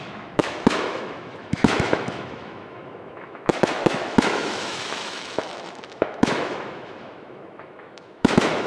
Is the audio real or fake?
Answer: fake